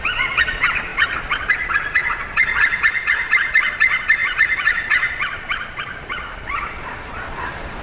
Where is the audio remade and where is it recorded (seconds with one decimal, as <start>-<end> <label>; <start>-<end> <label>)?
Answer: 0.0-7.8 remade